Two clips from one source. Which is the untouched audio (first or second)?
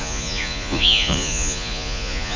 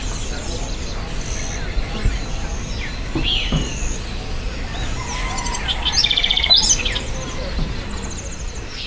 second